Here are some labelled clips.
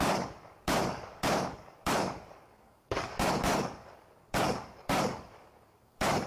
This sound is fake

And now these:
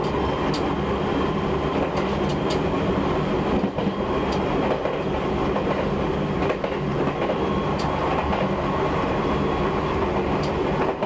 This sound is real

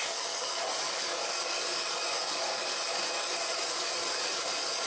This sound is fake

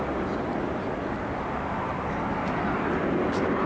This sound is real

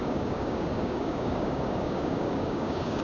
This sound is fake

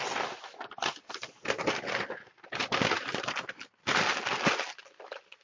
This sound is real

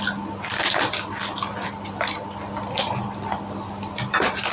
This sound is real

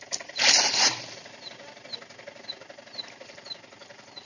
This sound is real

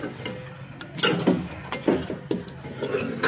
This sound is real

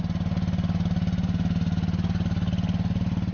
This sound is real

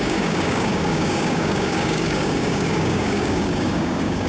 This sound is fake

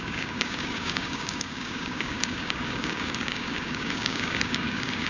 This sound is fake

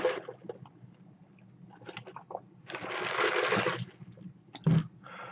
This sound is real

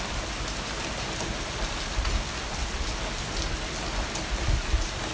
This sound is real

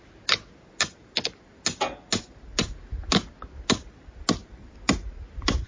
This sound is real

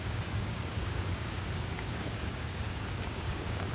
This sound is fake